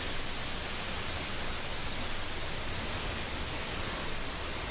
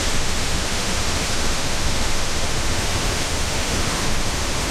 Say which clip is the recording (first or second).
first